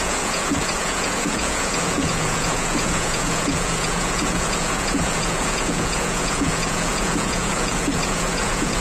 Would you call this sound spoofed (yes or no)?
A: yes